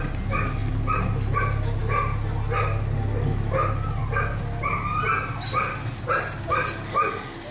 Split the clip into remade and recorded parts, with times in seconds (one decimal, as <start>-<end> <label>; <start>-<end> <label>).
0.0-0.6 recorded; 0.6-1.1 remade; 1.1-7.5 recorded